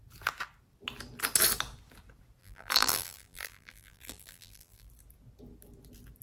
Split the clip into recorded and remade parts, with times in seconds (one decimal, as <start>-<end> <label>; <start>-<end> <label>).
0.0-2.4 recorded; 2.4-4.9 remade; 4.9-6.2 recorded